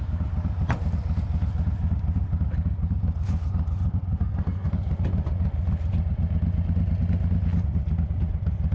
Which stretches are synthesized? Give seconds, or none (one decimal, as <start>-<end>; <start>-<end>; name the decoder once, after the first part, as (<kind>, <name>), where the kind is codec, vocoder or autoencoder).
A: 4.2-4.7 (codec, SNAC)